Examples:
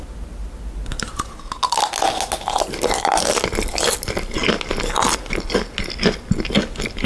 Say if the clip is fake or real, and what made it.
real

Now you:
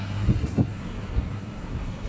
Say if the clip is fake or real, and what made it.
fake, codec, SNAC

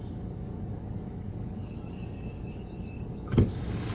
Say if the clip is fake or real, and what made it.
fake, codec, DAC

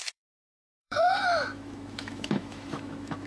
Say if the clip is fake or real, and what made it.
fake, autoencoder, DAC-VAE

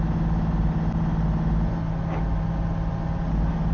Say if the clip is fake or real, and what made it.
real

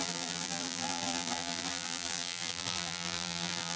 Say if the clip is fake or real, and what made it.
fake, vocoder, BigVGAN v2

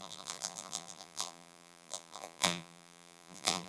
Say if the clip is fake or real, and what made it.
fake, vocoder, BigVGAN v2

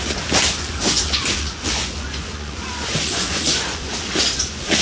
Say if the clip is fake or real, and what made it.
fake, vocoder, Vocos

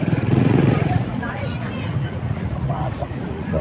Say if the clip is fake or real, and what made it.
fake, vocoder, Vocos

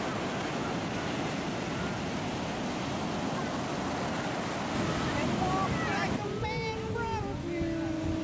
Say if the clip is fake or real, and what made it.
real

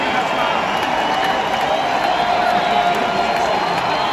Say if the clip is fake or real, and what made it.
real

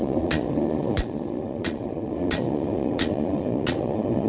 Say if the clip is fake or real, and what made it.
fake, vocoder, Vocos